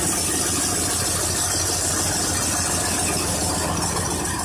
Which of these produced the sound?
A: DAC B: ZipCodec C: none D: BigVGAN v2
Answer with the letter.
C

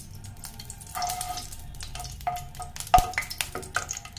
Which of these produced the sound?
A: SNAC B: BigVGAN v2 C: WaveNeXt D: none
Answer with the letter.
D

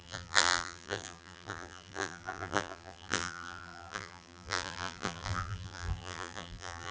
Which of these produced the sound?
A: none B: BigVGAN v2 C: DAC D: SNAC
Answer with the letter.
B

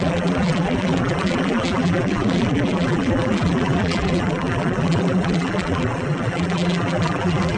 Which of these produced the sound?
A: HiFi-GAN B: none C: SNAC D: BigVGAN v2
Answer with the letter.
D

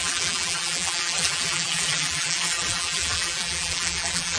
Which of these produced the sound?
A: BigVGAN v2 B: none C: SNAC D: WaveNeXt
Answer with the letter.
A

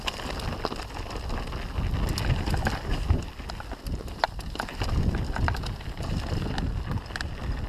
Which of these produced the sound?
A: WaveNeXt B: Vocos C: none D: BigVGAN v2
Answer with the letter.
C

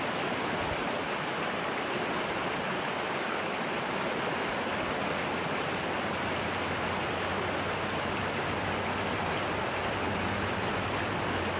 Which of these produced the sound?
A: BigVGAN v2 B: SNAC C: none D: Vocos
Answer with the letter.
C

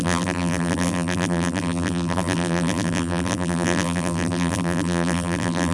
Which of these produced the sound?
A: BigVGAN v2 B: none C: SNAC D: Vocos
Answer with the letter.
A